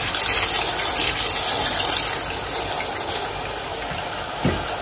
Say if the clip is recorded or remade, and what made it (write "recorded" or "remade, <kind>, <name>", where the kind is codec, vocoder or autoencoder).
recorded